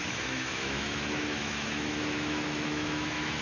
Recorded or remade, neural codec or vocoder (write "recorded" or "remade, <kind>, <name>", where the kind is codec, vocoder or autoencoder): remade, autoencoder, DAC-VAE